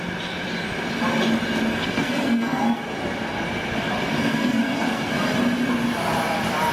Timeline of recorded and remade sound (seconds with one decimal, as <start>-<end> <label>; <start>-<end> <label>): 0.0-1.8 recorded; 1.8-2.8 remade; 2.8-4.2 recorded; 4.2-5.1 remade; 5.1-6.7 recorded